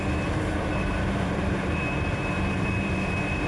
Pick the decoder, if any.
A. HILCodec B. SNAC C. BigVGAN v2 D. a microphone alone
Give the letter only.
C